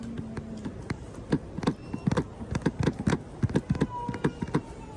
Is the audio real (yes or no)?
yes